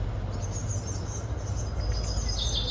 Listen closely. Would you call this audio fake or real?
real